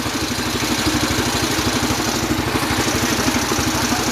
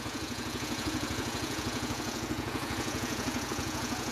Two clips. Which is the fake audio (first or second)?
second